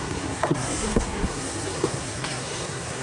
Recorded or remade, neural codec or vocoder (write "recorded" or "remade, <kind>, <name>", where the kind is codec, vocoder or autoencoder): remade, codec, SNAC